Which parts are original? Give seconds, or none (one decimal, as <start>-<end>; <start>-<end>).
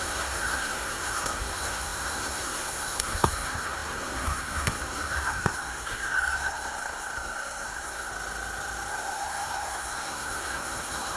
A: 8.1-8.9